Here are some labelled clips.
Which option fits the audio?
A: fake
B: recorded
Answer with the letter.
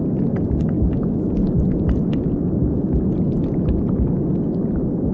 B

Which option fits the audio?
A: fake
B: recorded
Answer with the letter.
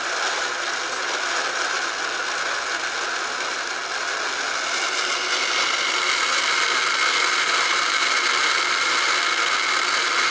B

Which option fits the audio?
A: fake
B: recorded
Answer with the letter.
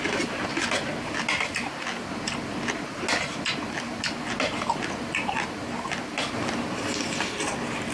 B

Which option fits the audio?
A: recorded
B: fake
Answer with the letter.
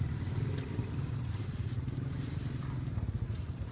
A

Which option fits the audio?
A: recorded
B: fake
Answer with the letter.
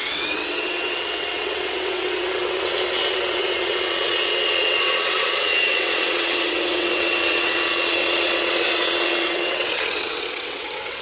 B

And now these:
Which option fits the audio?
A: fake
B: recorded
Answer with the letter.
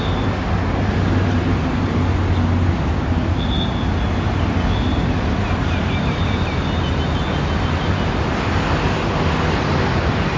B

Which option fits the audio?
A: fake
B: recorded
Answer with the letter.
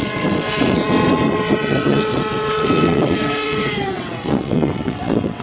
A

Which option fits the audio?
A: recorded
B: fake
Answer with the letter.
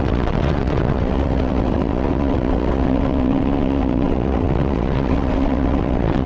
B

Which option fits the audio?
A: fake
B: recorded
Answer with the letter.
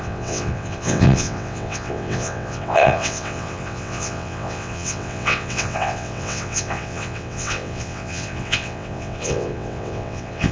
A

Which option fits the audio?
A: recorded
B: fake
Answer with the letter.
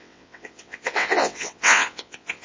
B